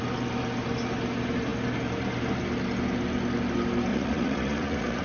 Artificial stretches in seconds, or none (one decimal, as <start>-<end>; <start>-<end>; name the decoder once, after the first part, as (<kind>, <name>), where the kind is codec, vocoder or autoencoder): 3.9-5.0 (vocoder, Vocos)